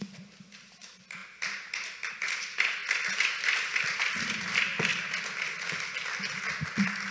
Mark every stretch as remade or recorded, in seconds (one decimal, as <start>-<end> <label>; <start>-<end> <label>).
0.0-1.2 remade; 1.2-2.1 recorded; 2.1-2.8 remade; 2.8-4.0 recorded; 4.0-4.9 remade; 4.9-7.1 recorded